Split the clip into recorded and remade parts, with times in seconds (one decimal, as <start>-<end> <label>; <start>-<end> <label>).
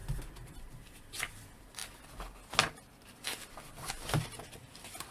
0.0-5.1 recorded